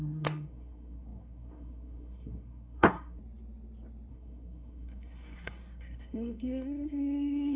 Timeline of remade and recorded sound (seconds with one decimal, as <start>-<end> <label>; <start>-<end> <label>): 0.0-3.2 remade; 3.2-4.1 recorded; 4.1-7.6 remade